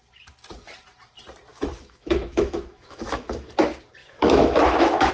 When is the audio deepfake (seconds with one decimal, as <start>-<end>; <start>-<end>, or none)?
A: 1.5-3.5; 4.0-5.1